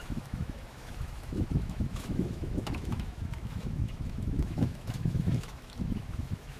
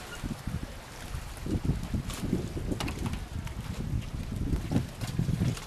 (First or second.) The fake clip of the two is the first